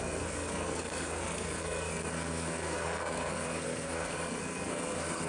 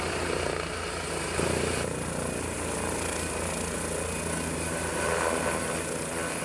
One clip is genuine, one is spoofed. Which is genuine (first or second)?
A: second